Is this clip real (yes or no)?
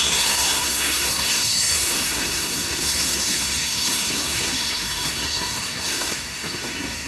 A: no